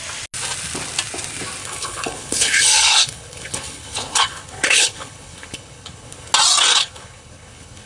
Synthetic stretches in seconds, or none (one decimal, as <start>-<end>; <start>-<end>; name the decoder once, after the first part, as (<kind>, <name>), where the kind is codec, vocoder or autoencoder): 1.6-6.3 (codec, HILCodec); 6.7-7.9